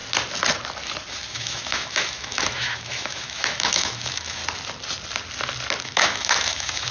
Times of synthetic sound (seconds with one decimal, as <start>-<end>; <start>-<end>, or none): 1.1-4.4; 5.8-6.9